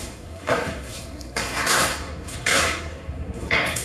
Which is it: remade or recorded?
remade